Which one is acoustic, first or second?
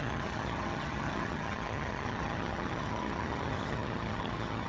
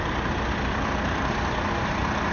second